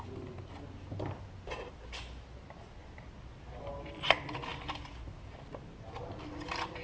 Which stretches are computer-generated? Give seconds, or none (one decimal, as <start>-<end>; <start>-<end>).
none